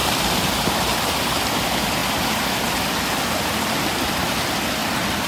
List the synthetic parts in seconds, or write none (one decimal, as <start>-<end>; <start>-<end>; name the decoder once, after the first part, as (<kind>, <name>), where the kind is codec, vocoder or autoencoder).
none

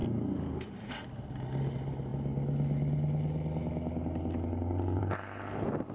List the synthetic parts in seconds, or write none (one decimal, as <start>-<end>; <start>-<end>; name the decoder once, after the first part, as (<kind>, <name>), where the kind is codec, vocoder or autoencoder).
none

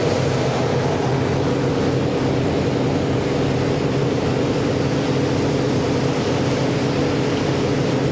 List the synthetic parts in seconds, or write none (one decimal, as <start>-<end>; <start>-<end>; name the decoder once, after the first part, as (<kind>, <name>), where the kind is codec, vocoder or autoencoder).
0.0-0.6 (vocoder, BigVGAN v2); 4.0-4.7

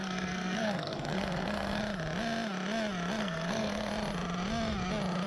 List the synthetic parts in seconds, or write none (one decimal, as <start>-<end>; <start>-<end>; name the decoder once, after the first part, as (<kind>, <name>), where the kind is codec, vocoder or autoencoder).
0.0-1.8 (codec, SNAC); 3.2-3.9

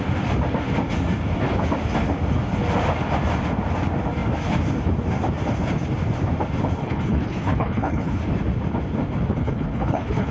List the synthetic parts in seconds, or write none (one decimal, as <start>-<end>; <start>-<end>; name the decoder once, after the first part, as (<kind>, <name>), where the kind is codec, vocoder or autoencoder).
6.8-8.2 (codec, HILCodec); 9.4-10.3